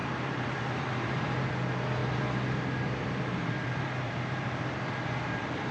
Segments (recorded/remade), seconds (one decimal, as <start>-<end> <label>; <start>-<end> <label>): 0.0-1.5 remade; 1.5-2.0 recorded; 2.0-5.7 remade